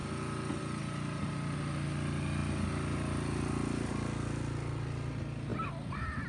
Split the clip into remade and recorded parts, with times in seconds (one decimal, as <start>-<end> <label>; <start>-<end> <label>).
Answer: 0.0-6.3 recorded